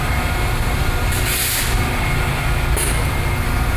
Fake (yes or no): no